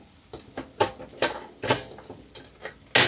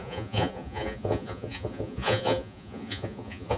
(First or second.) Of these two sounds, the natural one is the first